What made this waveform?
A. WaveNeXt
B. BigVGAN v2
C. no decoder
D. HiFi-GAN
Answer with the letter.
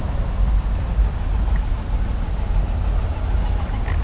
C